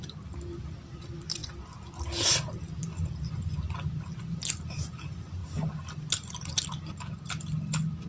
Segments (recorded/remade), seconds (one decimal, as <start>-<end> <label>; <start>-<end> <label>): 0.0-1.4 remade; 1.4-4.3 recorded; 4.3-8.1 remade